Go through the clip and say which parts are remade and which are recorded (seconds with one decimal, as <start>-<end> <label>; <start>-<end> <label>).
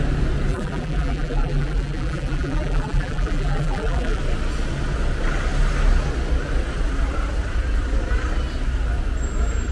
0.0-0.5 recorded; 0.5-4.2 remade; 4.2-9.7 recorded